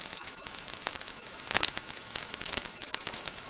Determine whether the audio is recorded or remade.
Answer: remade